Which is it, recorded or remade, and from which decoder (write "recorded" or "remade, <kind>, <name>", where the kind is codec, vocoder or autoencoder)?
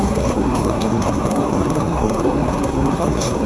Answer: remade, codec, SNAC